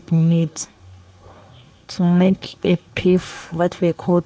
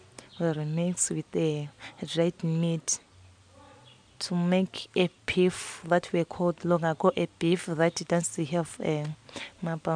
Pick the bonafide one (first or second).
second